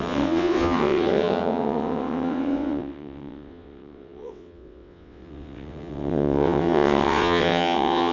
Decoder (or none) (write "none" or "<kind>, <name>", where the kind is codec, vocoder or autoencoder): vocoder, WaveNeXt